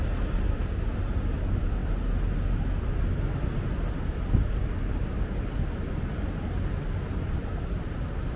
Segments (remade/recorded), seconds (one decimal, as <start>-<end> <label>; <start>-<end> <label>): 0.0-8.4 recorded